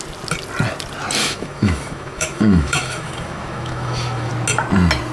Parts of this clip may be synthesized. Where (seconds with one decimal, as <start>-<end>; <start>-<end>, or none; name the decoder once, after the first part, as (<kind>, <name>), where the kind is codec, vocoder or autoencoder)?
1.2-4.3 (autoencoder, DAC-VAE)